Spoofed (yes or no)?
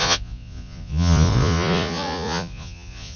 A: yes